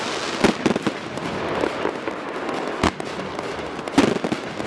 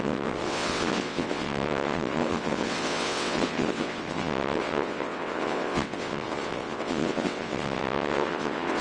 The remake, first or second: second